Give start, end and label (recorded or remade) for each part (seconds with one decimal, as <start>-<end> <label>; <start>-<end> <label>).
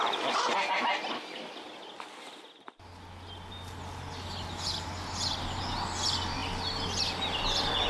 0.0-7.9 recorded